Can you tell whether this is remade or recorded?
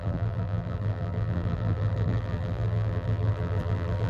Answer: remade